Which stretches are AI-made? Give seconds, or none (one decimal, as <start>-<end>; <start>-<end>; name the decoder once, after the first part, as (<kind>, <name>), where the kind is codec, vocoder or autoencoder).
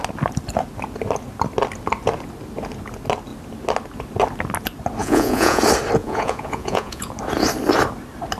5.0-5.6 (vocoder, Vocos); 6.0-7.1